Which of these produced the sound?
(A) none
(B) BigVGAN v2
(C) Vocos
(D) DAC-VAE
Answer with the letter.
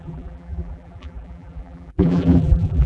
B